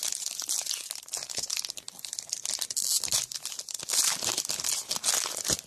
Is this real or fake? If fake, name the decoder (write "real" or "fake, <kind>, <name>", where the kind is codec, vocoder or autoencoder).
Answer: real